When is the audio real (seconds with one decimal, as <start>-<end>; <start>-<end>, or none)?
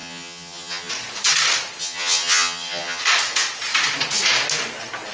0.9-1.8; 3.0-5.1